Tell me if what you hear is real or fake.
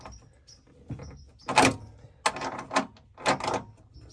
real